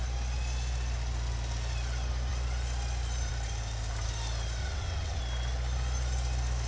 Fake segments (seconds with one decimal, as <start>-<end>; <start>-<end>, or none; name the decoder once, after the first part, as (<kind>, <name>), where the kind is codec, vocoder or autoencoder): 4.6-5.2 (vocoder, WaveNeXt)